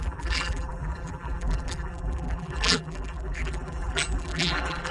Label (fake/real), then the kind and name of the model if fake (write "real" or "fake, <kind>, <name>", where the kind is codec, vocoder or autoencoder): fake, vocoder, BigVGAN v2